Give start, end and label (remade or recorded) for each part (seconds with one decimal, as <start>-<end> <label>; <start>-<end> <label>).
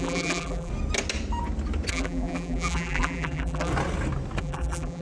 0.0-0.7 remade; 0.7-1.9 recorded; 1.9-3.7 remade; 3.7-4.4 recorded; 4.4-5.0 remade